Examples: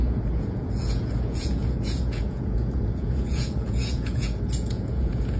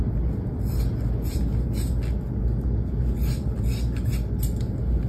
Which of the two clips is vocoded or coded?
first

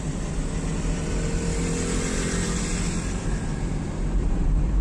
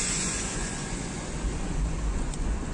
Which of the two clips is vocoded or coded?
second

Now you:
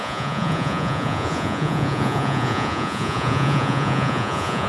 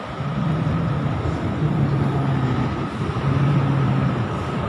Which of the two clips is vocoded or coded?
first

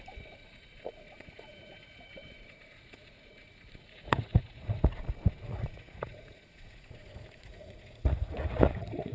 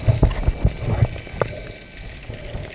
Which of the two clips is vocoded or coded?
first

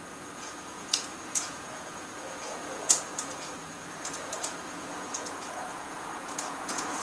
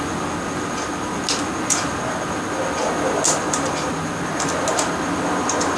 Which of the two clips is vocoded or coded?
first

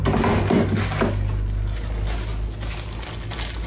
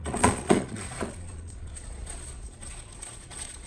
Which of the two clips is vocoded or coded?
second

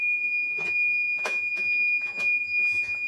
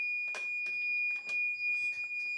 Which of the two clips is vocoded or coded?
first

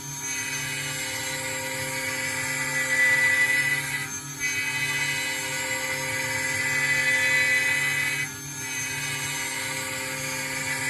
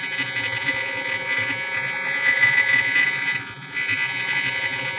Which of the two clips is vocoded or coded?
second